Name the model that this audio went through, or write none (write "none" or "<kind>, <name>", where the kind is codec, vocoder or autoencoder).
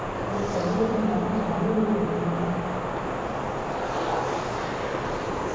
none